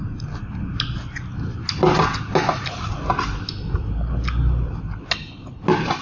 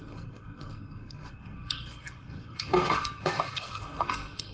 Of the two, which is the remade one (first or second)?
second